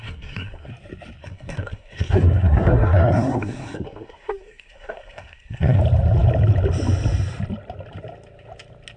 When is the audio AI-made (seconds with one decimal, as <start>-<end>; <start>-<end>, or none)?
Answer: 0.0-0.7; 1.2-5.8